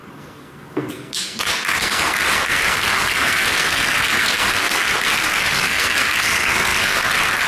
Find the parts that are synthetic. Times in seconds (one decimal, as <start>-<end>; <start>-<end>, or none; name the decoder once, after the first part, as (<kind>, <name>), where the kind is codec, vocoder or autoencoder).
0.0-7.5 (codec, SNAC)